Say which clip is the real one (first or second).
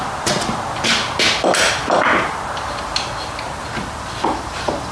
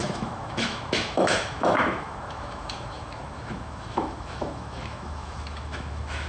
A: first